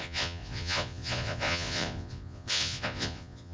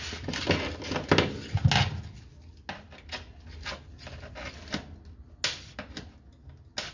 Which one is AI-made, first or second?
first